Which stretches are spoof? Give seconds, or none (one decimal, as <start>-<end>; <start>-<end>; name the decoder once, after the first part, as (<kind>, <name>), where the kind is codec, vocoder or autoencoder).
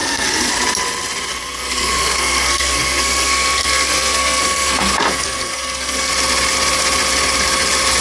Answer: 0.0-0.5 (codec, SNAC); 1.3-6.1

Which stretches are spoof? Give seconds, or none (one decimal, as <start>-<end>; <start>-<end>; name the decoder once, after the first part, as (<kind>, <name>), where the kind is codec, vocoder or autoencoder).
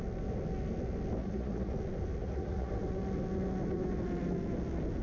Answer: 1.2-1.7 (vocoder, Vocos); 2.2-2.7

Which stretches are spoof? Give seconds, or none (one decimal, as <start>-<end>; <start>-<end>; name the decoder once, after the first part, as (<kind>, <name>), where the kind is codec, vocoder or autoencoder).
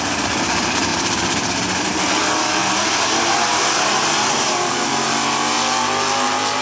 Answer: 2.6-4.7 (vocoder, BigVGAN v2)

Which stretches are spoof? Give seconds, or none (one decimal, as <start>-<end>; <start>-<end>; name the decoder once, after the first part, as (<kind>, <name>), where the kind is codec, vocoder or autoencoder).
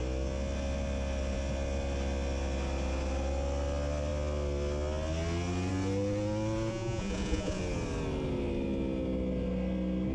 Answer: 6.7-7.6 (vocoder, Vocos)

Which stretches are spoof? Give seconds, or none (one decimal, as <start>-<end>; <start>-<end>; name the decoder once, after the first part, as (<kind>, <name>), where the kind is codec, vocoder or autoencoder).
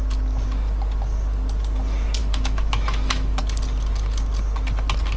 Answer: 2.2-3.4 (autoencoder, DAC-VAE)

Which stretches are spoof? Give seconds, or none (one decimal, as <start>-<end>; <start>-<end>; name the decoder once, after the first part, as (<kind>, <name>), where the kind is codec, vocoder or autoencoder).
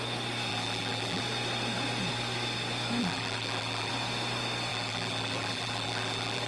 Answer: 0.5-1.2 (vocoder, BigVGAN v2); 3.0-3.9; 4.7-6.5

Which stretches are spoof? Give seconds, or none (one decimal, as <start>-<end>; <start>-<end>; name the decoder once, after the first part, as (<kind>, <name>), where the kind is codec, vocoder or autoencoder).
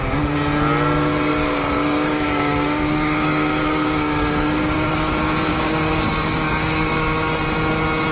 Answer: 1.3-5.1 (codec, DAC); 5.5-7.3